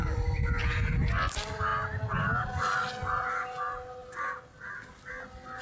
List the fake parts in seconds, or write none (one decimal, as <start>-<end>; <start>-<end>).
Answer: none